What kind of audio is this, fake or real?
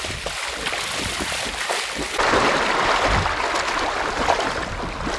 real